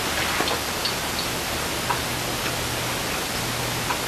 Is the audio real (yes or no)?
yes